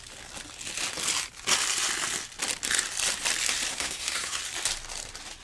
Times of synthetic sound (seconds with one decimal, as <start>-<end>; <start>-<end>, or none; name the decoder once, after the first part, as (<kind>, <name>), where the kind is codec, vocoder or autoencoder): 3.7-4.4 (codec, SNAC)